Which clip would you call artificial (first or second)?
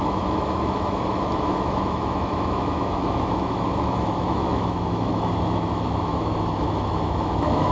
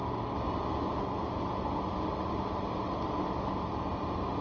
first